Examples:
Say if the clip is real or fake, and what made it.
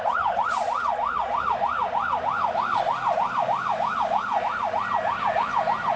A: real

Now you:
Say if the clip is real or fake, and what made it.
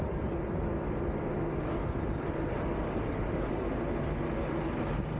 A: real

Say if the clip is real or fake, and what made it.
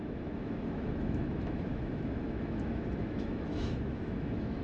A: fake, autoencoder, DAC-VAE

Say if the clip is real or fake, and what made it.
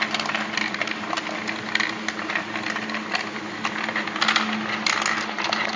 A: real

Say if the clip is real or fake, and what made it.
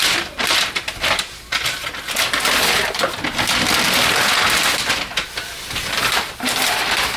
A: real